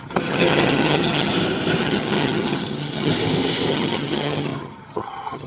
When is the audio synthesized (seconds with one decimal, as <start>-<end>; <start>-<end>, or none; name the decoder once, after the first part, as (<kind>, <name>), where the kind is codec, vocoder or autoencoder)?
0.0-1.3 (vocoder, HiFi-GAN); 1.8-3.1; 3.7-5.5

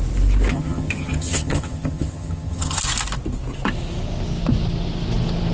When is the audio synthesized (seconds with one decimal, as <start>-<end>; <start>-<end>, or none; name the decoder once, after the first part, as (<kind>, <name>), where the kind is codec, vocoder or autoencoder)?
0.5-2.8 (vocoder, HiFi-GAN)

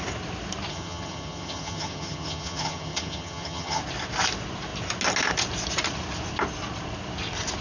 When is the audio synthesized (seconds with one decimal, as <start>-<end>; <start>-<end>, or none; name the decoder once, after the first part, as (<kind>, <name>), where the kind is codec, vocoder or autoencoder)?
0.7-3.8 (vocoder, HiFi-GAN)